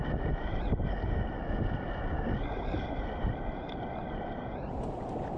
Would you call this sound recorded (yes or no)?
yes